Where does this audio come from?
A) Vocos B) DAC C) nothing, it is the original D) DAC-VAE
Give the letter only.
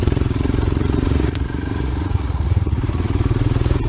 A